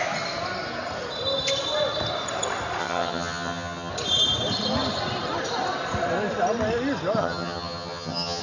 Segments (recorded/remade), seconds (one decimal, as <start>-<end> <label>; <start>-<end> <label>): 0.0-2.8 recorded; 2.8-3.9 remade; 3.9-7.2 recorded; 7.2-8.4 remade